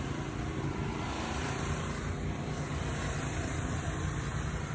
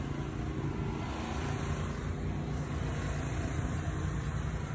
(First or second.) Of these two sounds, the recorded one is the second